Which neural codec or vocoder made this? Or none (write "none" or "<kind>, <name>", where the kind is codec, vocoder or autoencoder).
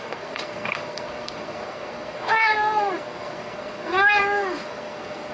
codec, SNAC